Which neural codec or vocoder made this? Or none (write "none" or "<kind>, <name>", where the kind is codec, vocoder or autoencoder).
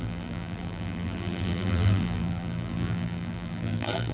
vocoder, BigVGAN v2